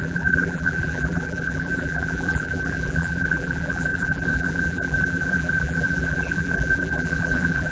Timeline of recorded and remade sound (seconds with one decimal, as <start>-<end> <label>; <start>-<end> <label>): 0.0-7.7 remade